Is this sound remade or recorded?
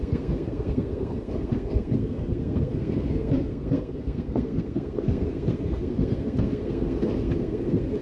remade